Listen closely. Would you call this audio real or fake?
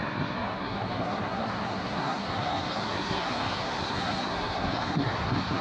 fake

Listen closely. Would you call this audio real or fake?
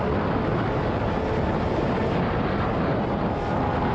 real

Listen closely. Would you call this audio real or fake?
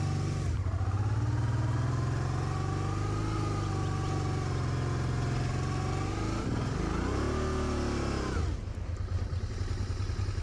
real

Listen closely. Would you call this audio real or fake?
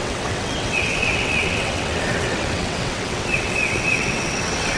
fake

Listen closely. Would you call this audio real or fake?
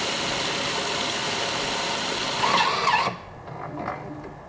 real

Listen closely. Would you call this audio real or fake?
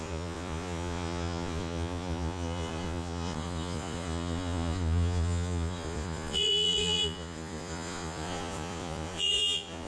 fake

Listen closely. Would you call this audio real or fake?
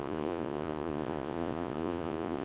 fake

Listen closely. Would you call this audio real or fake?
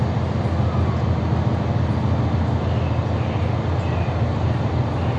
real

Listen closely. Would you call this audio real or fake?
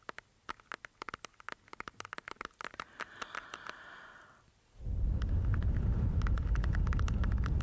real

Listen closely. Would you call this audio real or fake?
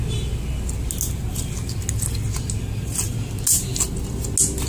real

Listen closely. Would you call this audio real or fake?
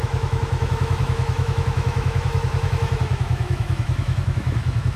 fake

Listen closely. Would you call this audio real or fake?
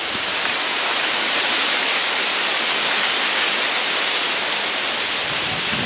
real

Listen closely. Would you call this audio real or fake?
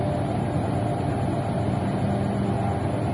real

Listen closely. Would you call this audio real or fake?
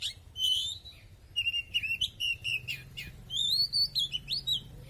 fake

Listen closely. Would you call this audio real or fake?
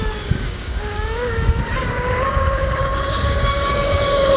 fake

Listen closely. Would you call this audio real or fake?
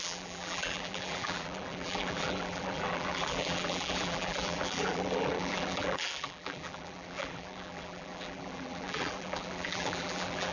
fake